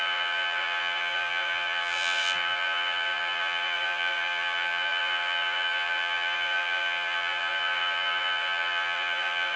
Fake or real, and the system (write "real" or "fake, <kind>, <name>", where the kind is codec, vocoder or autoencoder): fake, vocoder, BigVGAN v2